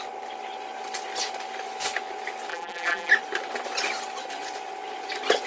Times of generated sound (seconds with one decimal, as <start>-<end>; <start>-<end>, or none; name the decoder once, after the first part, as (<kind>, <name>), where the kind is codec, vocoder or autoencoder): 2.5-3.1 (vocoder, BigVGAN v2)